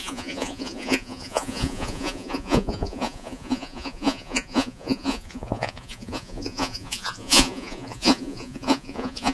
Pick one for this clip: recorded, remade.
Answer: remade